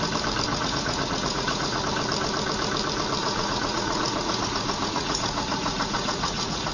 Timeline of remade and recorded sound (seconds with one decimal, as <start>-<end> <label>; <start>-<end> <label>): 0.0-0.5 recorded; 0.5-1.8 remade; 1.8-3.2 recorded; 3.2-6.7 remade